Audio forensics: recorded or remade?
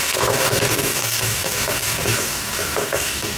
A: remade